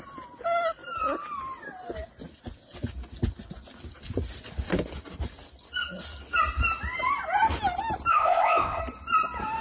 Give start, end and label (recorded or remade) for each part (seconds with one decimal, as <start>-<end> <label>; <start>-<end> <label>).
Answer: 0.0-8.1 recorded; 8.1-8.8 remade; 8.8-9.6 recorded